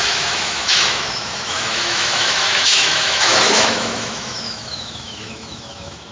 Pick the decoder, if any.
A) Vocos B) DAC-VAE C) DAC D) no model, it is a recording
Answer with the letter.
B